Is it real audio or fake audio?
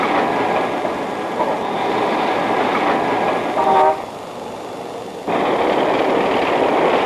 real